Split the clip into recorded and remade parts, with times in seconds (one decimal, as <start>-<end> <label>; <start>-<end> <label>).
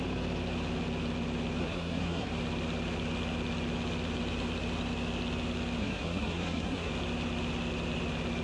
0.0-1.6 recorded; 1.6-2.3 remade; 2.3-5.8 recorded; 5.8-6.9 remade; 6.9-8.4 recorded